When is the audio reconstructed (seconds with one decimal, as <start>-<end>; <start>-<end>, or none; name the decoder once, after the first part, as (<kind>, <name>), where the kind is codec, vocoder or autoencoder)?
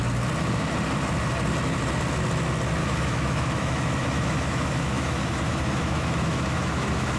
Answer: 2.8-7.2 (autoencoder, DAC-VAE)